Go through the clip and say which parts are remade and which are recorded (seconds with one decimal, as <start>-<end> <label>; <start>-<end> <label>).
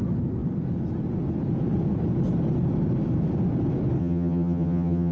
0.0-4.0 recorded; 4.0-5.1 remade